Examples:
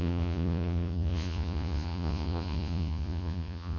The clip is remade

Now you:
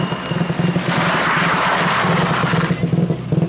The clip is recorded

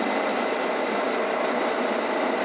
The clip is recorded